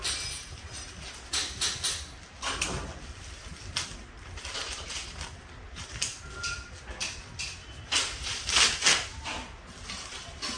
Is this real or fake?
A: real